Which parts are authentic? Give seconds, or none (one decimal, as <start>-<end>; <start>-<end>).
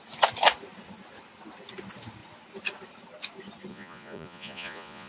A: 0.0-3.7